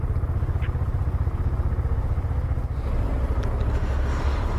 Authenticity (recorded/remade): recorded